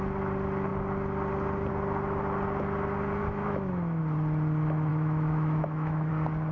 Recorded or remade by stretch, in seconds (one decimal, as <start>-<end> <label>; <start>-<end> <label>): 0.0-3.2 recorded; 3.2-4.0 remade; 4.0-4.9 recorded; 4.9-6.1 remade; 6.1-6.5 recorded